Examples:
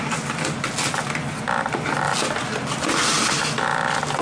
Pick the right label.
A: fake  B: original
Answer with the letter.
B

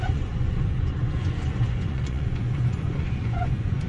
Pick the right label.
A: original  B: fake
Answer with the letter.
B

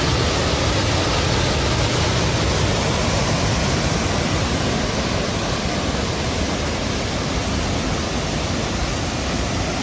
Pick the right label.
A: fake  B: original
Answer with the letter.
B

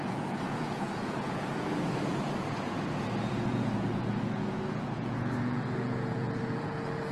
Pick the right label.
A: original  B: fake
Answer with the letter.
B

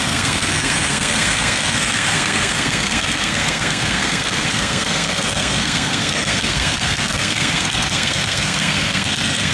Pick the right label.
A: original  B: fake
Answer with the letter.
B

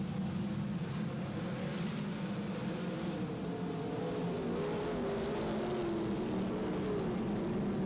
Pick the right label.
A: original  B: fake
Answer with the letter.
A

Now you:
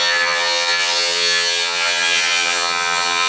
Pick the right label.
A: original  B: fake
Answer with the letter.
B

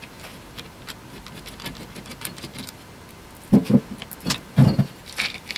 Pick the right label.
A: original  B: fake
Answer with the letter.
A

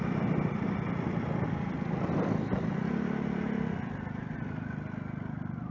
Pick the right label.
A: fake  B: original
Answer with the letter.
B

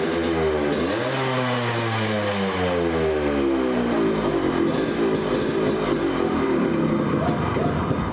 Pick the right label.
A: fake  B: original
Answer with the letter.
B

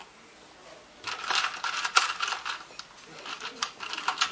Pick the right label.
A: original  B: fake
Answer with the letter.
A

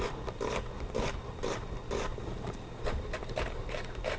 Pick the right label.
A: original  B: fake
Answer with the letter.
A